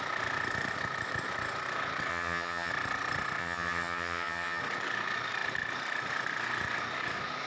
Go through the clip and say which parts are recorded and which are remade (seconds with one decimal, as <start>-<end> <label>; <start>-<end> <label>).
0.0-2.1 recorded; 2.1-2.7 remade; 2.7-3.4 recorded; 3.4-4.6 remade; 4.6-7.5 recorded